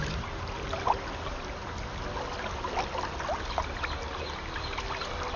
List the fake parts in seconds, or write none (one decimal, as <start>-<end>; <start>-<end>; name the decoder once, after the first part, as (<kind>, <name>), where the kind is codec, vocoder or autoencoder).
none